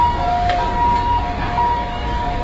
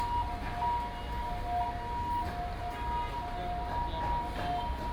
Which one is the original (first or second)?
second